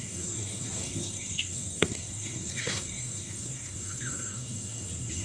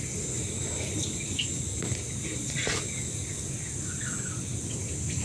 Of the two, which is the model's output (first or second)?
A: first